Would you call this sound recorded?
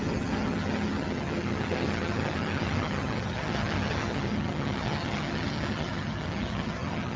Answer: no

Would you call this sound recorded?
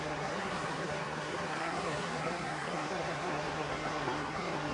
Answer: no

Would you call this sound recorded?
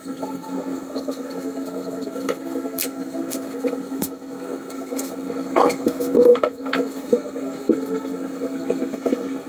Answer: no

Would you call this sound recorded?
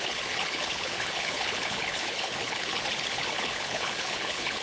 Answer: no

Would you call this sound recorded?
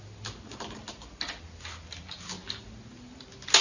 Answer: yes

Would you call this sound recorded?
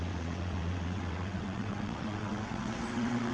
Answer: no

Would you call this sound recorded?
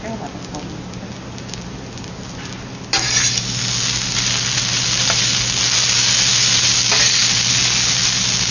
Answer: yes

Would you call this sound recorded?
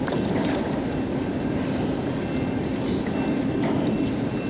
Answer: yes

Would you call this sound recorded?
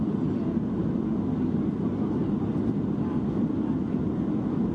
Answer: yes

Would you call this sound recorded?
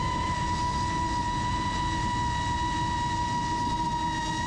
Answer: yes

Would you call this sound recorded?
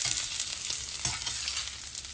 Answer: yes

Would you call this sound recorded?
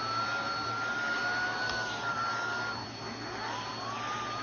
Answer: yes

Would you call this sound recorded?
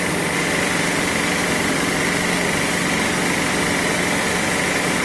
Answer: yes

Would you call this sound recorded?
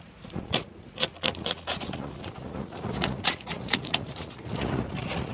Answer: no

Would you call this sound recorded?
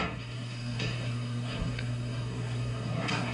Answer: no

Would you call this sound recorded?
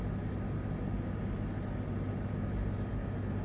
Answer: yes